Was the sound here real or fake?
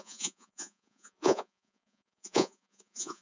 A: fake